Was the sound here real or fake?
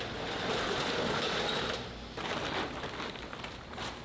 real